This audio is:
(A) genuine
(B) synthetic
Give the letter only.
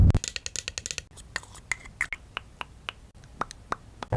A